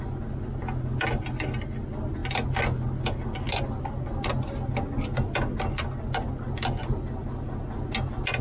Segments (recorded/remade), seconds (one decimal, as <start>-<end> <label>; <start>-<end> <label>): 0.0-8.4 recorded